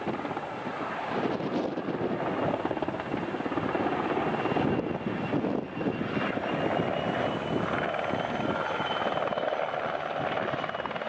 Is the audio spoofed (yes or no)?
no